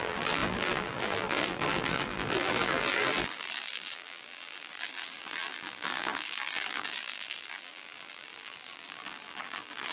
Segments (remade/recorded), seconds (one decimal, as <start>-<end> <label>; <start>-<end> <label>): 0.0-9.9 remade